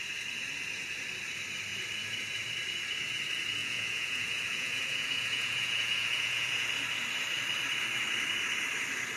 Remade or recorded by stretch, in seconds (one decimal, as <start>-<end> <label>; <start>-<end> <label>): 0.0-3.6 recorded; 3.6-6.7 remade; 6.7-9.2 recorded